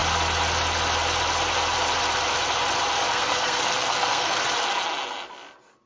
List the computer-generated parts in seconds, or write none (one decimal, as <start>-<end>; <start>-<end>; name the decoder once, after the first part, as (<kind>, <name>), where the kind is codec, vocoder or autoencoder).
3.1-4.4 (codec, SNAC)